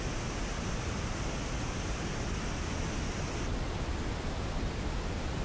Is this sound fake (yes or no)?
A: no